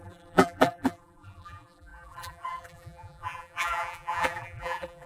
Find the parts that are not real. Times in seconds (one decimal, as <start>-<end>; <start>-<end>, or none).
0.0-5.1